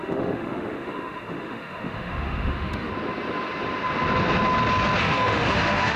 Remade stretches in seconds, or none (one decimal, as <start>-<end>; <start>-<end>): 0.0-2.9; 5.0-6.0